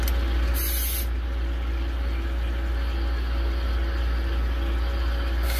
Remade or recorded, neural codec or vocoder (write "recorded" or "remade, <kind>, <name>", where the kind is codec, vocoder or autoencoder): recorded